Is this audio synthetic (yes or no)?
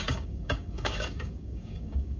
yes